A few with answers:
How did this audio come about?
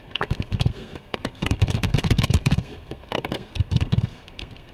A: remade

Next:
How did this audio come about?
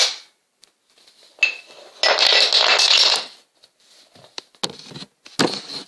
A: recorded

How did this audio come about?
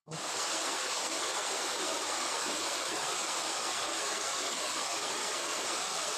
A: remade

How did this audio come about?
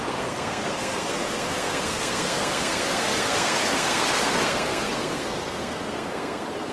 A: remade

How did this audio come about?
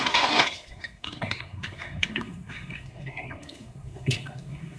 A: remade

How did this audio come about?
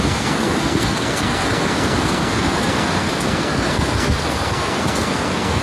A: remade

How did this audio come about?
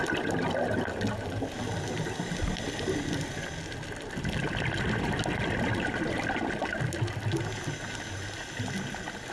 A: recorded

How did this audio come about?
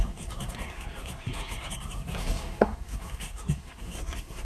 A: remade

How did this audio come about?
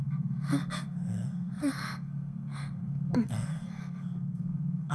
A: remade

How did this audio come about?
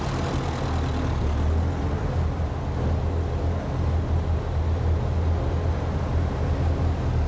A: recorded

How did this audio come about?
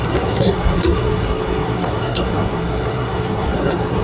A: remade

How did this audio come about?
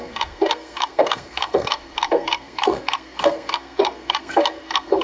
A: remade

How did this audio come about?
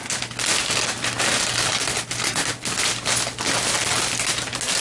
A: recorded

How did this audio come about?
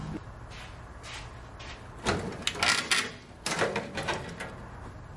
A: recorded